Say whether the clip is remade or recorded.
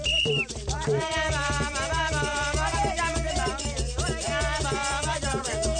remade